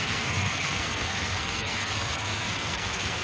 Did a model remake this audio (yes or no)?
yes